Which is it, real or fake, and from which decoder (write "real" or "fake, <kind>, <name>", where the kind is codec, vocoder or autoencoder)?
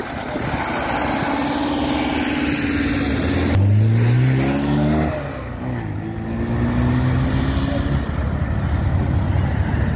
real